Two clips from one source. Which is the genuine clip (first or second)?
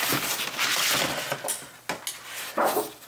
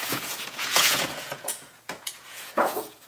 first